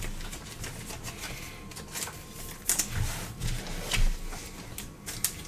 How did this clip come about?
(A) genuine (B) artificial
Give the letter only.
A